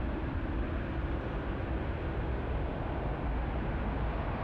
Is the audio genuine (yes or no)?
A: yes